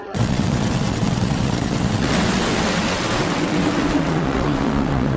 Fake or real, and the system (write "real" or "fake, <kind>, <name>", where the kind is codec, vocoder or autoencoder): fake, vocoder, WaveNeXt